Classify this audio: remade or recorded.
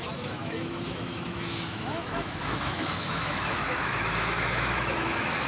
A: remade